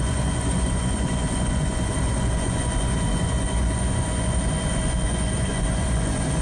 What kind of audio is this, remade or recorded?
remade